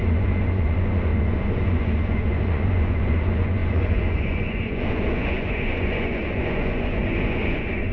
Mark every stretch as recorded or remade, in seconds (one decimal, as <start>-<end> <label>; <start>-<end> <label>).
0.0-7.9 remade